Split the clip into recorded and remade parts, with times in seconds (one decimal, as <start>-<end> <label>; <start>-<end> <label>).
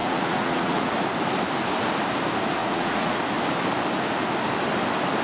0.0-0.9 remade; 0.9-2.6 recorded; 2.6-3.2 remade; 3.2-5.2 recorded